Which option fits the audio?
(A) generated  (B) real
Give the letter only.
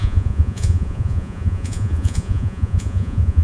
A